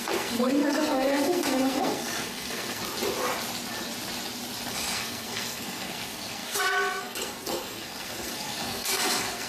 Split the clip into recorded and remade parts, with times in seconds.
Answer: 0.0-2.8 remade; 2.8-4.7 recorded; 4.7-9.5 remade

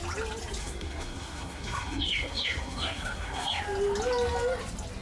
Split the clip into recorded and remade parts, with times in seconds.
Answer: 0.0-0.6 recorded; 0.6-3.6 remade; 3.6-5.0 recorded

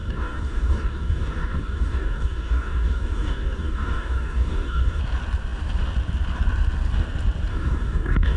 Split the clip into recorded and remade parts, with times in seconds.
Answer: 0.0-5.0 remade; 5.0-7.5 recorded; 7.5-8.4 remade

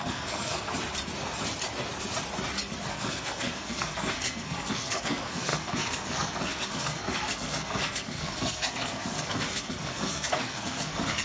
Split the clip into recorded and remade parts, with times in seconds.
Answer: 0.0-0.7 remade; 0.7-2.9 recorded; 2.9-11.2 remade

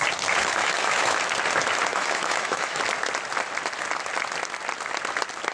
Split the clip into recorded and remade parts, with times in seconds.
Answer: 0.0-0.6 recorded; 0.6-1.3 remade; 1.3-1.9 recorded; 1.9-2.8 remade; 2.8-5.5 recorded

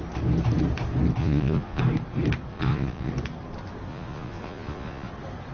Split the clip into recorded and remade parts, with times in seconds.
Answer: 0.0-1.2 recorded; 1.2-1.8 remade; 1.8-2.5 recorded; 2.5-3.1 remade; 3.1-3.9 recorded; 3.9-5.1 remade; 5.1-5.5 recorded